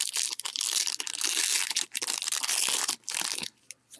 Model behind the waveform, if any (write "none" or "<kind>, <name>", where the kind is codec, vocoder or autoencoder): none